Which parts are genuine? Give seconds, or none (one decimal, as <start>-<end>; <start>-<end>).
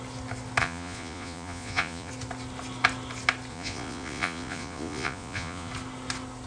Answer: 0.0-0.6; 2.1-3.5; 5.7-6.5